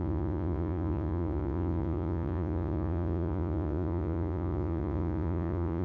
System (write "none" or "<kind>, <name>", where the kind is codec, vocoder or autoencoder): vocoder, Vocos